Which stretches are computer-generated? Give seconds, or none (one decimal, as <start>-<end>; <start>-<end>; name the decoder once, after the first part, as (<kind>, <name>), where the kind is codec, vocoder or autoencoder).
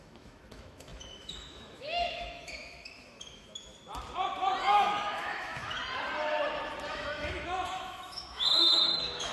0.0-3.7 (autoencoder, DAC-VAE); 4.6-5.8; 6.9-9.3